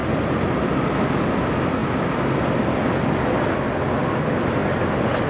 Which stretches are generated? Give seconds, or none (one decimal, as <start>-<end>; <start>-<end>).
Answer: none